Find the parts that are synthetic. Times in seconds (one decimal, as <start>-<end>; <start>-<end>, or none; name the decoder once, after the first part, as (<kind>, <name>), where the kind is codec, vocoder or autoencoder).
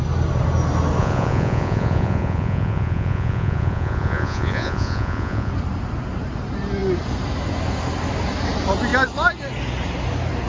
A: 1.0-5.5 (vocoder, Vocos)